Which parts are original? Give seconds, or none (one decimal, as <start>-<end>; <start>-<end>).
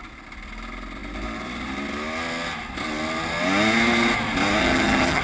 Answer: 0.0-4.6